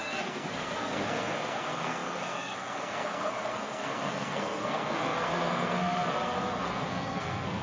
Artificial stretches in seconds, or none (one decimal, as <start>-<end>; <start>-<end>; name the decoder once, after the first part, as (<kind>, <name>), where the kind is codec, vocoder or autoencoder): 0.0-7.6 (codec, SNAC)